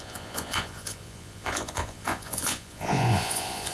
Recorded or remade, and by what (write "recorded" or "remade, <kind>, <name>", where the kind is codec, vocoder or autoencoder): remade, vocoder, Vocos